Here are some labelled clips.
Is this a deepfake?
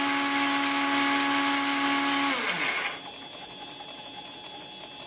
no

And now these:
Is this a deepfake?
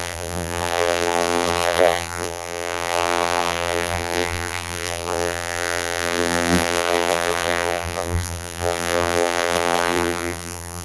yes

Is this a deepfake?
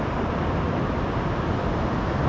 no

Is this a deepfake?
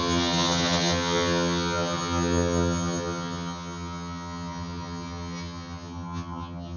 yes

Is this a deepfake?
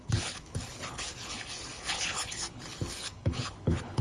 yes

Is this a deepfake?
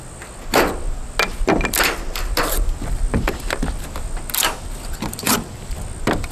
no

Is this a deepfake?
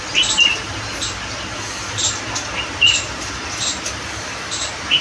no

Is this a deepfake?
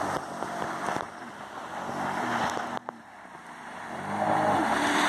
no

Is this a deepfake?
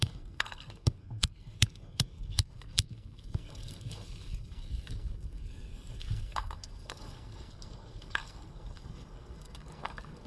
yes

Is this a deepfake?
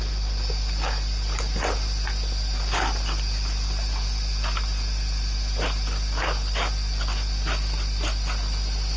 no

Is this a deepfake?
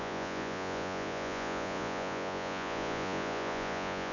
yes